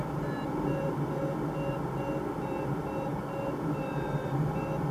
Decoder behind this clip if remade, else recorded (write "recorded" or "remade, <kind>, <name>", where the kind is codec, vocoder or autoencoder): recorded